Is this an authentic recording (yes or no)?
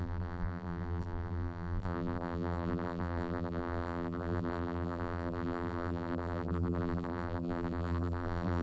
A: no